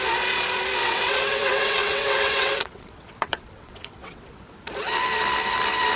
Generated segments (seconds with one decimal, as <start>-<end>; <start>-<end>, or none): 0.8-4.3